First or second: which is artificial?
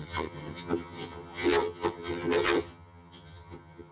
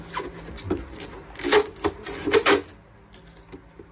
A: first